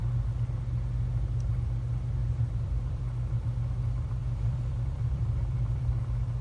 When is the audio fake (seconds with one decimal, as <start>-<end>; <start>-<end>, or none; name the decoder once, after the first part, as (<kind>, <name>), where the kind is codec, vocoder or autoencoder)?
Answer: 2.2-3.0 (vocoder, BigVGAN v2); 4.2-6.0